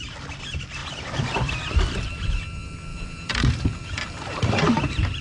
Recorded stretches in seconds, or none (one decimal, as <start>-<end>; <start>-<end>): 0.0-0.8; 1.7-2.9; 4.5-5.2